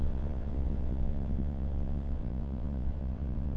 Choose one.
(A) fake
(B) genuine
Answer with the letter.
A